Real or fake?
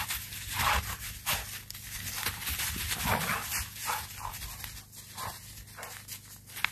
real